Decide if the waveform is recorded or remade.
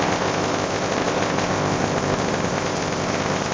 remade